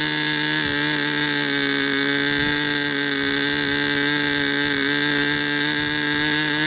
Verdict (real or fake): real